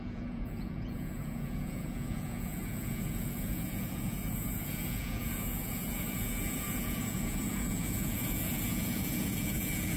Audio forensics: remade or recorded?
remade